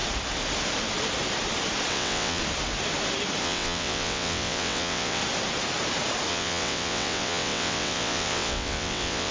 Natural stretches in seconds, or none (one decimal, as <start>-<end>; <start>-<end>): 0.0-1.9; 2.4-3.4; 5.2-6.3